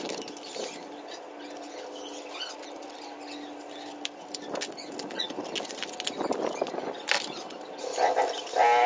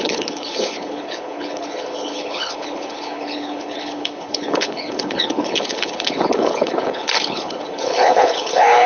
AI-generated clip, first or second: second